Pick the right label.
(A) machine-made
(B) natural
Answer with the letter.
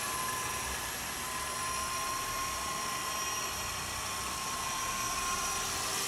B